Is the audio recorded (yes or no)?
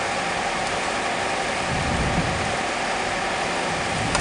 yes